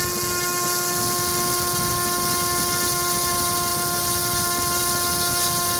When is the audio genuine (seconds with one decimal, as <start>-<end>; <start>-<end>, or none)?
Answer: 0.0-5.8